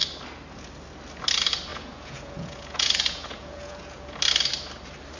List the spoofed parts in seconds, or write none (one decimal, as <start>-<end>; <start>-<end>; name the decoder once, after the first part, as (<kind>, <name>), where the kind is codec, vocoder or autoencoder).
1.7-4.2 (vocoder, Vocos)